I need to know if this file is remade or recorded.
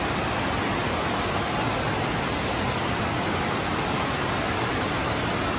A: recorded